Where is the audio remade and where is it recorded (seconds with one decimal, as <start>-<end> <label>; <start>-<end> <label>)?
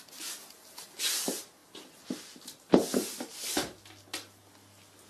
0.0-5.1 recorded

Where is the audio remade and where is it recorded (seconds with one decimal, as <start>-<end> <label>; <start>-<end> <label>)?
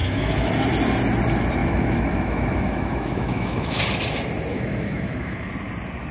0.0-0.5 remade; 0.5-1.6 recorded; 1.6-3.8 remade; 3.8-4.5 recorded; 4.5-5.5 remade; 5.5-6.1 recorded